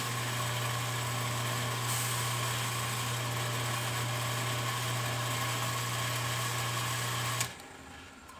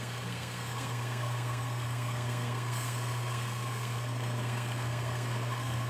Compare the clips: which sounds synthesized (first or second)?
second